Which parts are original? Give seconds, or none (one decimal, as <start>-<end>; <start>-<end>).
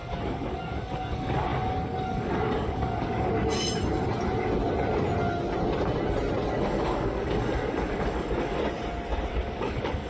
3.3-6.6; 8.6-9.3